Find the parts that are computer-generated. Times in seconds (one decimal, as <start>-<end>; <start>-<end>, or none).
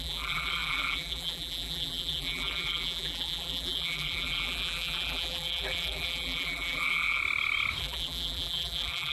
0.0-7.2; 7.8-9.1